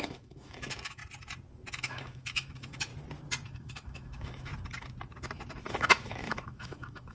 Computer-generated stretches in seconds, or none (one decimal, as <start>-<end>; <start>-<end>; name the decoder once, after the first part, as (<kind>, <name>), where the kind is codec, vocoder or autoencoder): 0.0-1.0 (autoencoder, DAC-VAE); 1.7-2.9; 3.5-4.5; 5.7-7.1